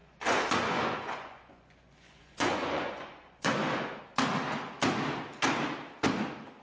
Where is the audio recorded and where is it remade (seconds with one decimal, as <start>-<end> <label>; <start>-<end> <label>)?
0.0-4.0 remade; 4.0-6.6 recorded